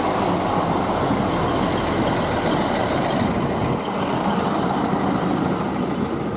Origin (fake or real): real